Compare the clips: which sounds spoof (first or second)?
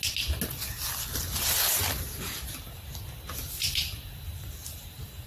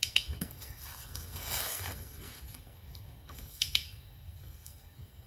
second